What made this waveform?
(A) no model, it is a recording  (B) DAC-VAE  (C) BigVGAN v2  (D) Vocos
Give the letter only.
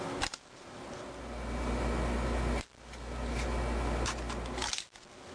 A